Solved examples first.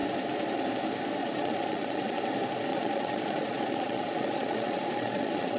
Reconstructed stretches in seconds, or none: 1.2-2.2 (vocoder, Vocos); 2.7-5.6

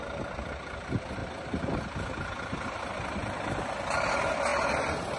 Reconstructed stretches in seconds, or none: none

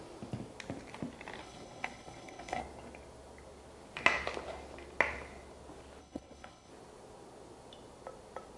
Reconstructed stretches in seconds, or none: 1.4-2.6 (codec, HILCodec); 6.0-6.7

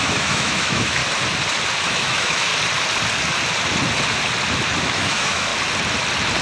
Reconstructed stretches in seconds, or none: 0.0-1.0 (autoencoder, DAC-VAE); 1.8-2.5; 4.8-5.5